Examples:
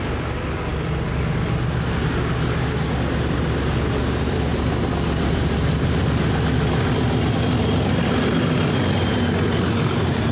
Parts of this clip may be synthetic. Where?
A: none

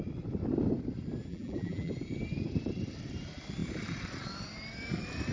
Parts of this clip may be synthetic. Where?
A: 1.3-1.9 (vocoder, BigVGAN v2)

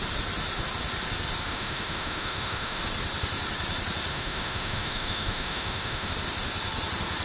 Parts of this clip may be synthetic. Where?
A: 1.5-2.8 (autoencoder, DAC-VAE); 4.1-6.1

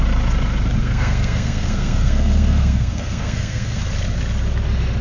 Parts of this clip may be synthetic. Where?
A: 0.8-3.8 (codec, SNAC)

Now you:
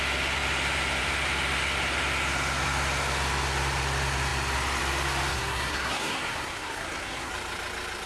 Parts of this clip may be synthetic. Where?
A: 5.3-7.3 (codec, SNAC)

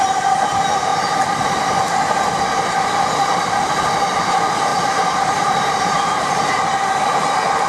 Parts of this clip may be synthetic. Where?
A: 4.7-6.6 (vocoder, BigVGAN v2)